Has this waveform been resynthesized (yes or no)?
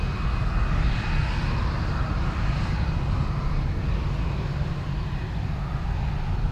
no